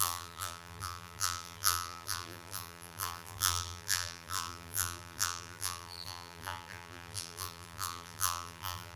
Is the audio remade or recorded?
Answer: remade